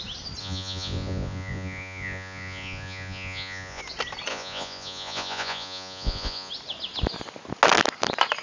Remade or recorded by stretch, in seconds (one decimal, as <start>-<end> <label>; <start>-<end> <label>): 0.0-0.4 recorded; 0.4-3.8 remade; 3.8-4.3 recorded; 4.3-6.5 remade; 6.5-8.4 recorded